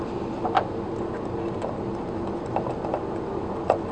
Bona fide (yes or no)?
yes